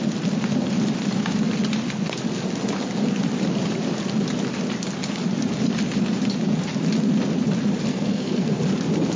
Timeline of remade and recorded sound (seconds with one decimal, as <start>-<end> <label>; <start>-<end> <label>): 0.0-7.9 recorded; 7.9-8.6 remade; 8.6-9.2 recorded